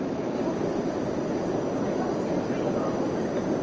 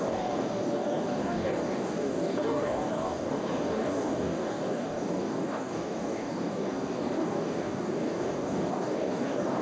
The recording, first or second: first